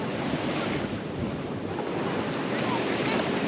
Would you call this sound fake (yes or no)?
no